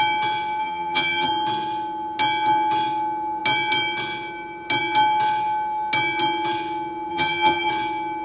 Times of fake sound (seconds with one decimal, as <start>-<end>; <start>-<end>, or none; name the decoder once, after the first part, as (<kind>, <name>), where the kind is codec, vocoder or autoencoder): 0.6-1.3 (vocoder, HiFi-GAN); 7.1-7.7